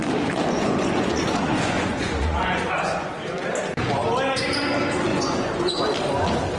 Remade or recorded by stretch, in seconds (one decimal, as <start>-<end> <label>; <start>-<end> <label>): 0.0-0.5 recorded; 0.5-3.1 remade; 3.1-5.1 recorded; 5.1-5.8 remade; 5.8-6.6 recorded